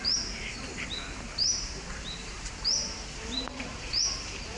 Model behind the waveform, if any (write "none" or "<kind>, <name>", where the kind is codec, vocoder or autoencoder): vocoder, BigVGAN v2